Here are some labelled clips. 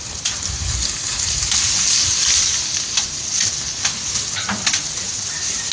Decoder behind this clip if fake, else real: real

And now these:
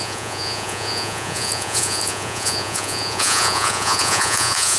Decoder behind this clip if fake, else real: fake, vocoder, Vocos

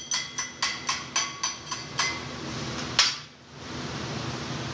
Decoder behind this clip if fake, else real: real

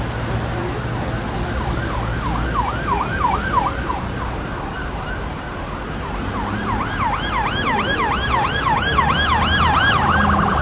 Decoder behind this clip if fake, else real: real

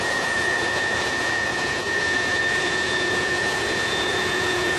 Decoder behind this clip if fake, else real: fake, vocoder, Vocos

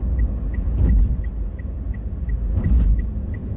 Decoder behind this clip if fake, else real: real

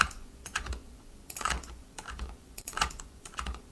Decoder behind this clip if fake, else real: fake, vocoder, Vocos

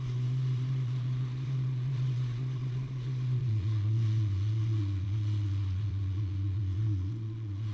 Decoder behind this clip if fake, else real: fake, vocoder, Vocos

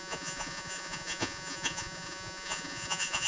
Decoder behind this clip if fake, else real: fake, vocoder, Vocos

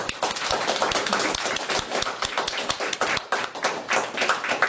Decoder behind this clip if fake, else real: real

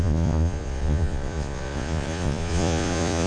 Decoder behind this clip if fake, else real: fake, vocoder, Vocos